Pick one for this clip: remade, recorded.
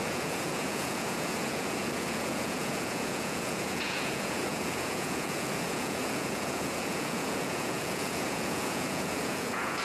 remade